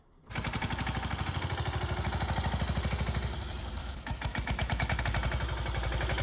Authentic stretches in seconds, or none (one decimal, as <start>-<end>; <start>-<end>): 0.0-3.8; 5.0-6.2